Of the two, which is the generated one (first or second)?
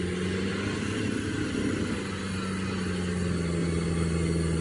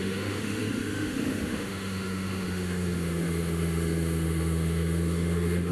second